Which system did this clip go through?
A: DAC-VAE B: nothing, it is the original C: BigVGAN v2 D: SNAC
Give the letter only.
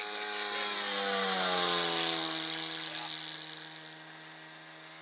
B